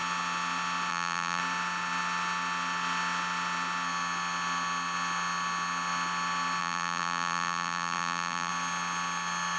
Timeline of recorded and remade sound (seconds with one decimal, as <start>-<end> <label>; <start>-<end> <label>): 0.0-0.9 recorded; 0.9-1.4 remade; 1.4-6.6 recorded; 6.6-8.5 remade; 8.5-9.6 recorded